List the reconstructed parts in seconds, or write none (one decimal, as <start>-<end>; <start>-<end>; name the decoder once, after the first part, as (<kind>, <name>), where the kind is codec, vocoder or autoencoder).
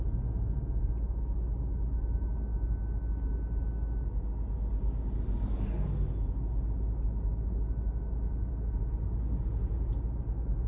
none